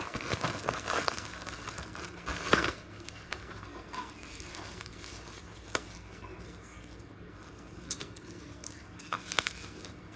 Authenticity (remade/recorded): remade